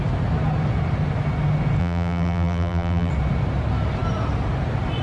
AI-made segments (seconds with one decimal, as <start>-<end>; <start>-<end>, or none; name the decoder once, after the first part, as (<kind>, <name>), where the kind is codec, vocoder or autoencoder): 1.8-3.1 (vocoder, BigVGAN v2)